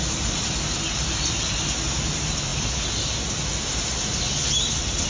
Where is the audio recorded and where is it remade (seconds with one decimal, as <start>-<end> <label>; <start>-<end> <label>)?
0.0-5.1 recorded

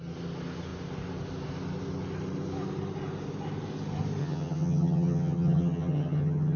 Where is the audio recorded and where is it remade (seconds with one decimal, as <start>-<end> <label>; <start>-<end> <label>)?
0.0-4.2 recorded; 4.2-6.6 remade

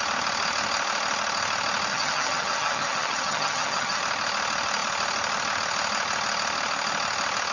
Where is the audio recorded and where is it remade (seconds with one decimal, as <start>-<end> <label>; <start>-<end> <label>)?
0.0-1.9 recorded; 1.9-4.0 remade; 4.0-7.5 recorded

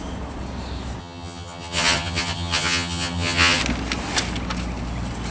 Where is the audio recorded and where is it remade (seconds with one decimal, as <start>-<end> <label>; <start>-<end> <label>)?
0.0-1.0 recorded; 1.0-3.6 remade; 3.6-5.3 recorded